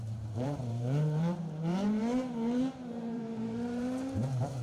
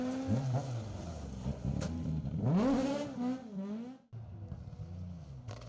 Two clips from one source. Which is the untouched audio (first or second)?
second